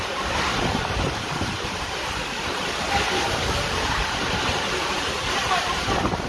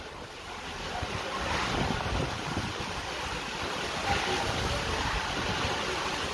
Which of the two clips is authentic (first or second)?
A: second